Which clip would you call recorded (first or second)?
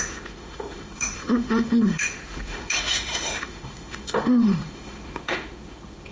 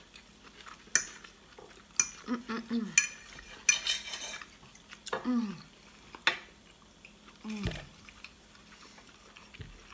second